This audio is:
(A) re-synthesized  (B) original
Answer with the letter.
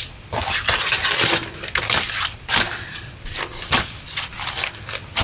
B